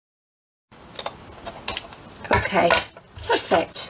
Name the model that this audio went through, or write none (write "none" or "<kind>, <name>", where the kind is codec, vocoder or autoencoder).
none